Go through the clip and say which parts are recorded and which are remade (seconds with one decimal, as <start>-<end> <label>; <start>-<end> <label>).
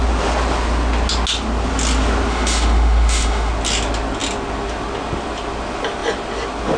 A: 0.0-2.3 recorded; 2.3-3.5 remade; 3.5-6.8 recorded